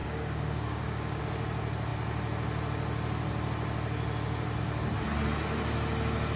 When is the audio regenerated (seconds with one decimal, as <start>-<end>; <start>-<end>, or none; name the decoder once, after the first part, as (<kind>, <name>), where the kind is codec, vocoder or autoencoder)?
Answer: 0.0-1.2 (codec, DAC)